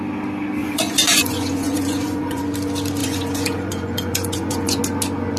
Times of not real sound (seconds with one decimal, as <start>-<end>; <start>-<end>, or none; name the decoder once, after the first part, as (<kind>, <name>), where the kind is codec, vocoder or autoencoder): 0.6-2.4 (vocoder, Vocos); 3.0-4.8